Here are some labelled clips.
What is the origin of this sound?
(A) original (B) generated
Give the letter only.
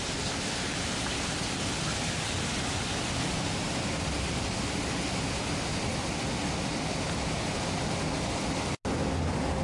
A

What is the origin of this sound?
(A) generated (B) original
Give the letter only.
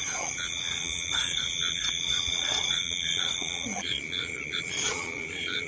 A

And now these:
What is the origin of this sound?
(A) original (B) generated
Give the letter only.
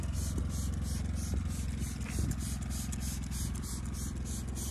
A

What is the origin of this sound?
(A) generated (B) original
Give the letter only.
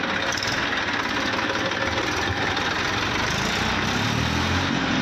B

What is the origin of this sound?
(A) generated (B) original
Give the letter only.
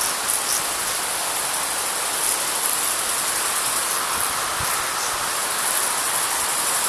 B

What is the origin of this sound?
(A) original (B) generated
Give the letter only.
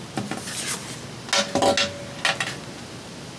A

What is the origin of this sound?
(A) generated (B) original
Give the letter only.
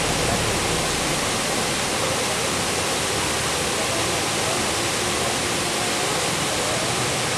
B